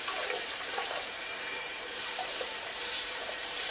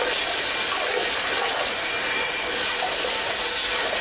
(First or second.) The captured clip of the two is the second